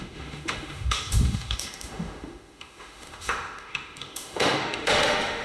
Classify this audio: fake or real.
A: fake